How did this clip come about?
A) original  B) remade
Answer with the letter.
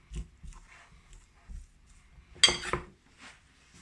A